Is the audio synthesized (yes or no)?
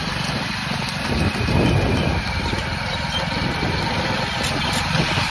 no